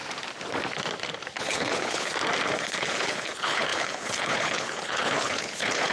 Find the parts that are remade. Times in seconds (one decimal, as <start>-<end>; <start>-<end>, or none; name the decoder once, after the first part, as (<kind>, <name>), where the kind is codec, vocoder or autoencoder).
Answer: 1.4-2.1 (codec, HILCodec); 2.6-5.9